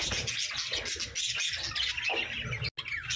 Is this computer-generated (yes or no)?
no